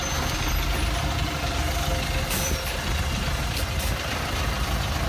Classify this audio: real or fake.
real